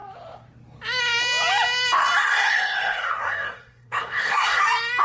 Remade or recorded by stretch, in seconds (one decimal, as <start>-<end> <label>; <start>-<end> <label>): 0.0-2.2 recorded; 2.2-4.6 remade; 4.6-5.0 recorded